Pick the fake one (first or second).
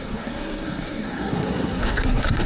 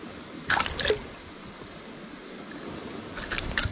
first